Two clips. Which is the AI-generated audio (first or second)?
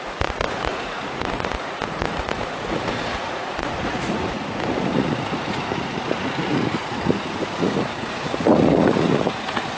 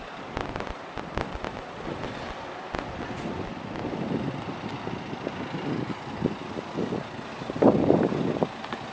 first